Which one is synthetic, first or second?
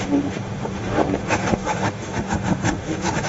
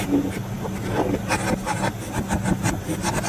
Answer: first